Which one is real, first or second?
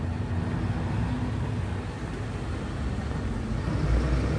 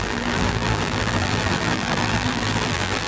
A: first